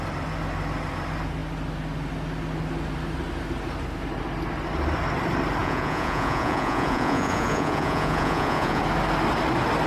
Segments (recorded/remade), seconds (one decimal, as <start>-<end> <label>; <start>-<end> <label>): 0.0-5.6 recorded; 5.6-8.8 remade; 8.8-9.9 recorded